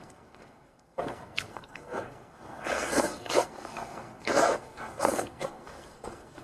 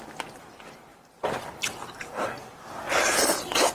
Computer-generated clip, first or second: first